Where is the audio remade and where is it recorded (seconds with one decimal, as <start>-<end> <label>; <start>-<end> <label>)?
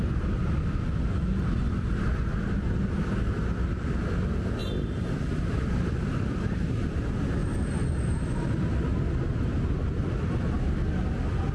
0.0-4.6 recorded; 4.6-5.9 remade; 5.9-11.5 recorded